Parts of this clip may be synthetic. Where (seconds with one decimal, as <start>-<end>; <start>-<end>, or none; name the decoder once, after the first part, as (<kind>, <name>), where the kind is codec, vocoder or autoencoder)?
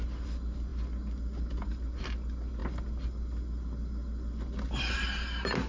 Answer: none